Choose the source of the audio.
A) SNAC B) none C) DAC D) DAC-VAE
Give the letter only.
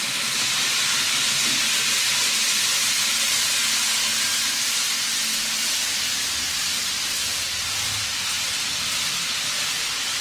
B